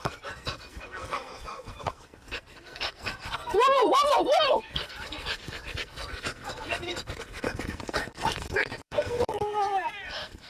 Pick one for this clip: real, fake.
fake